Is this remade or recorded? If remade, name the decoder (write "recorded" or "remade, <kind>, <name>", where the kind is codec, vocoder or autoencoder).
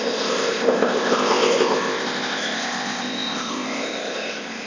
remade, codec, ZipCodec